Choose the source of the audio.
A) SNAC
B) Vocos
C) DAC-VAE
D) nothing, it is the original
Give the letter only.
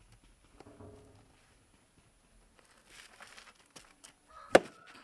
D